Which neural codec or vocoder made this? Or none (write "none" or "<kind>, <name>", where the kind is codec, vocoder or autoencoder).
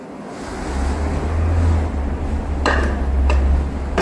none